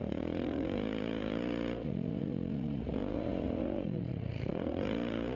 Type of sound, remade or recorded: remade